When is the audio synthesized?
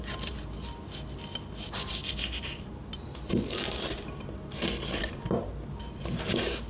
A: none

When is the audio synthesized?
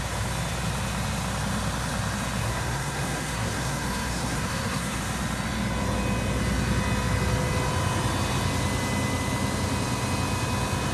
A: 2.4-5.0 (codec, SNAC)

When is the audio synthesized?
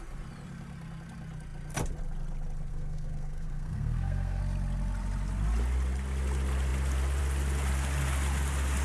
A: 2.7-4.4 (codec, SNAC)